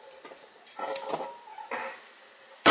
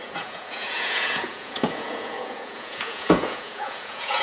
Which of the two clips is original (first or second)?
first